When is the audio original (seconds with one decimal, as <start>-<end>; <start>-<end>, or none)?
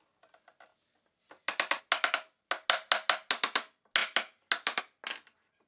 0.0-5.7